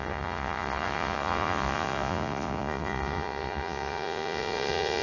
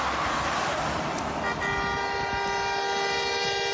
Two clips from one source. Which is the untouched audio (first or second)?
second